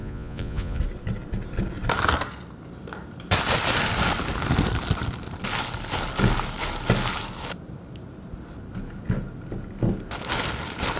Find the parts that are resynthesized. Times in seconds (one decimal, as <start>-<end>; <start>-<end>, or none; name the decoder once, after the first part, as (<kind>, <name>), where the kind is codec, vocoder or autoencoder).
0.0-0.8 (vocoder, Vocos)